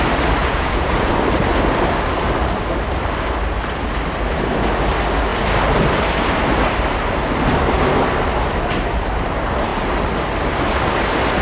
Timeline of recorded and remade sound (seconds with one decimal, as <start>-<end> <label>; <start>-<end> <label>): 0.0-0.4 recorded; 0.4-1.1 remade; 1.1-11.4 recorded